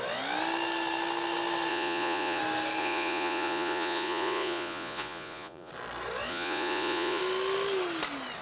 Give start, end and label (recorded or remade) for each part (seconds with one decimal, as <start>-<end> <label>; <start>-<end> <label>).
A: 0.0-1.7 recorded; 1.7-2.4 remade; 2.4-2.8 recorded; 2.8-5.7 remade; 5.7-6.3 recorded; 6.3-7.2 remade; 7.2-8.4 recorded